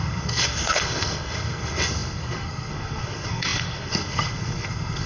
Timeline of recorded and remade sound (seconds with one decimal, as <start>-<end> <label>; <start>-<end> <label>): 0.0-5.1 remade

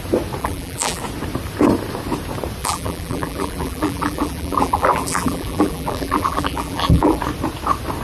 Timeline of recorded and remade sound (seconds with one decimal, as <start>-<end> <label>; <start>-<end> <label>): 0.0-0.4 recorded; 0.4-1.0 remade; 1.0-2.6 recorded; 2.6-7.2 remade; 7.2-8.0 recorded